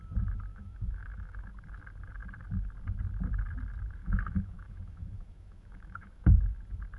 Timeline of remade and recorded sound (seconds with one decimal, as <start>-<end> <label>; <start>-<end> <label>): 0.0-0.5 recorded; 0.5-1.5 remade; 1.5-4.0 recorded; 4.0-6.3 remade; 6.3-7.0 recorded